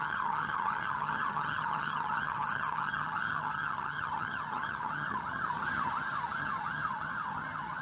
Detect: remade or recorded remade